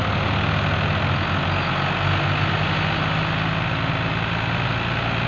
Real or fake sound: real